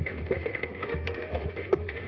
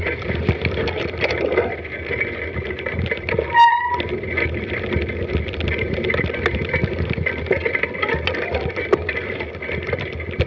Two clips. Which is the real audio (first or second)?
second